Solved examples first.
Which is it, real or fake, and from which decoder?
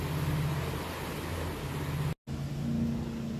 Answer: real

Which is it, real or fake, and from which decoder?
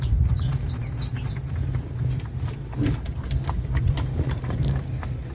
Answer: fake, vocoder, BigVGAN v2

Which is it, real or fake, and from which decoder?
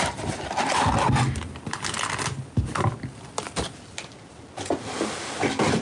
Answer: real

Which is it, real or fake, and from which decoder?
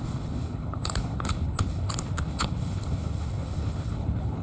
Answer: fake, codec, HILCodec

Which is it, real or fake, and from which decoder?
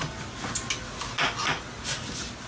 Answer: real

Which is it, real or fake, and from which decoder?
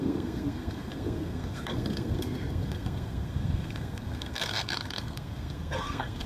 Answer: fake, codec, SNAC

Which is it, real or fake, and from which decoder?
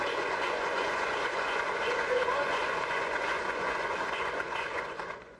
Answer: fake, vocoder, Vocos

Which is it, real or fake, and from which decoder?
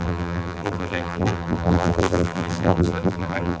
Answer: fake, vocoder, BigVGAN v2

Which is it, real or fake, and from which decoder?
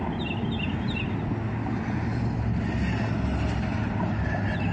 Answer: real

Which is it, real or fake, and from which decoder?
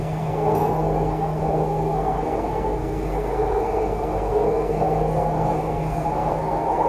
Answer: fake, codec, SNAC